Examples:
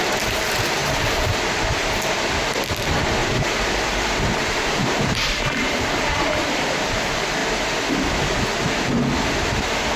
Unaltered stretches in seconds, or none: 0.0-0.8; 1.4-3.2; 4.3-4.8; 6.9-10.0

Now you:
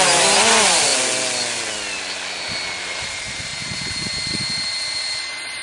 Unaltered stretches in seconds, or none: 0.9-2.8

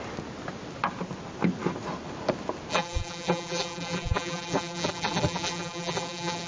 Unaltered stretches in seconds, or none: 0.0-2.7